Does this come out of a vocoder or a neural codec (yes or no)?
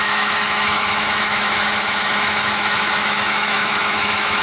yes